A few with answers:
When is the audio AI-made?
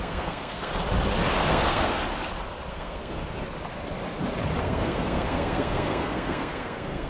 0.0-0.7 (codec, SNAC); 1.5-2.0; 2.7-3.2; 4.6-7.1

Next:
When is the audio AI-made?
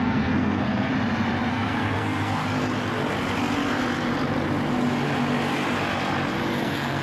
0.0-0.9 (codec, SNAC); 1.5-2.4; 6.6-7.0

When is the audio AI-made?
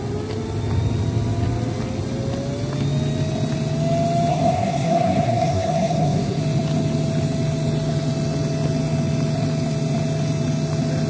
4.3-6.4 (codec, SNAC)